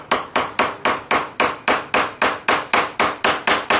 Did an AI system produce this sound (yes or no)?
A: no